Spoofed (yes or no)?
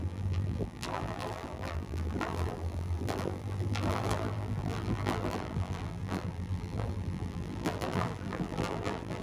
yes